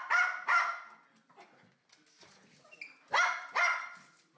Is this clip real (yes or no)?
yes